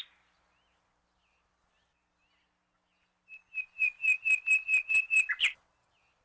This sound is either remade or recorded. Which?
recorded